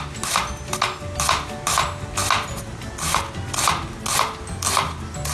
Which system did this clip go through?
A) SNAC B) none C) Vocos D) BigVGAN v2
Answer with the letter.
B